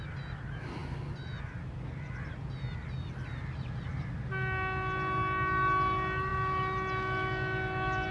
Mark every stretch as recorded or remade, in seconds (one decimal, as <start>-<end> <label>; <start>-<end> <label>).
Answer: 0.0-8.1 recorded